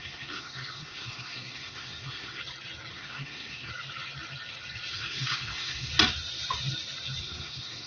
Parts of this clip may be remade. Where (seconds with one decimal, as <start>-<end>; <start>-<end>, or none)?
0.0-2.4; 2.9-3.7; 4.9-5.9; 7.2-7.9